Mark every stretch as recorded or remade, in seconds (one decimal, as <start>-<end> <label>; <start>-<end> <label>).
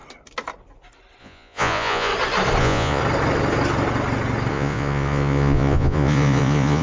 0.0-1.2 recorded; 1.2-2.1 remade; 2.1-2.6 recorded; 2.6-3.0 remade; 3.0-4.5 recorded; 4.5-6.8 remade